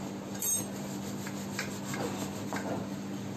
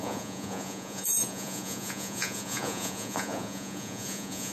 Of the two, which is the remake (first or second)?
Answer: second